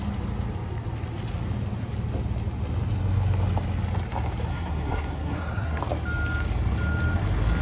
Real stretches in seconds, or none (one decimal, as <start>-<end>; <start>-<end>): 0.0-4.5; 5.8-7.6